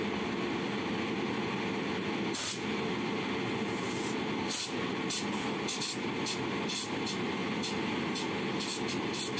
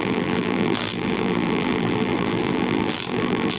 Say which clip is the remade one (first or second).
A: second